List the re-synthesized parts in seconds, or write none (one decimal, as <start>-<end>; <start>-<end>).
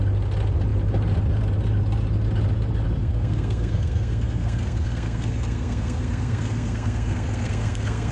3.0-8.1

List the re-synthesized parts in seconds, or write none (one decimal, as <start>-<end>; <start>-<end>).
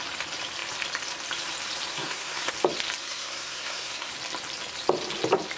1.9-2.5; 3.0-4.1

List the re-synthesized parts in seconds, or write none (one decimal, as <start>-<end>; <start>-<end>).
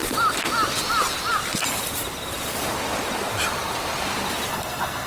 4.5-5.1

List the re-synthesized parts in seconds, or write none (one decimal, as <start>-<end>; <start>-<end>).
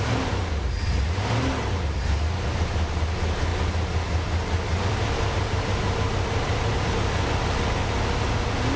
none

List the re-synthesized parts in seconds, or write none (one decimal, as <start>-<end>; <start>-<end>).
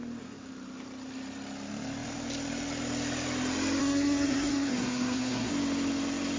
3.8-5.5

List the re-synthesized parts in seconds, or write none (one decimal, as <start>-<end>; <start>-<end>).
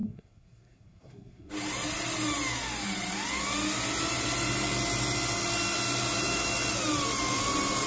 0.0-1.5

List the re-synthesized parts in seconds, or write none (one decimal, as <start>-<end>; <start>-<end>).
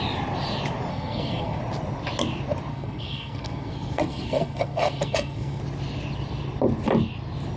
0.9-1.6; 2.7-5.6